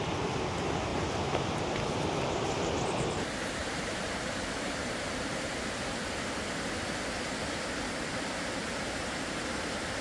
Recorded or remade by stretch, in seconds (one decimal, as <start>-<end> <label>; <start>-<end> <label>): 0.0-0.9 recorded; 0.9-1.5 remade; 1.5-3.6 recorded; 3.6-6.0 remade; 6.0-8.6 recorded; 8.6-9.4 remade; 9.4-10.0 recorded